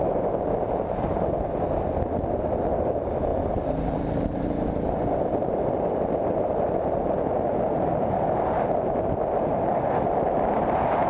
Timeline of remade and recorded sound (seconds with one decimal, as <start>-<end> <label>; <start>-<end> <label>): 0.0-3.3 recorded; 3.3-7.4 remade; 7.4-11.1 recorded